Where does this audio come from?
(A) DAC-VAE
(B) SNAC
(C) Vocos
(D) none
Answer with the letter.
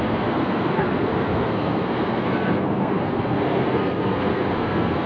B